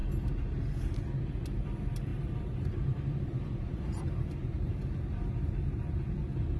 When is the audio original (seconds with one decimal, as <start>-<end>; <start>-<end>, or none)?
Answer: 0.0-2.1; 6.1-6.6